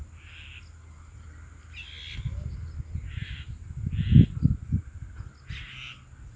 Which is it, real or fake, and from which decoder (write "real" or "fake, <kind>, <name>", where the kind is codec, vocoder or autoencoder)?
real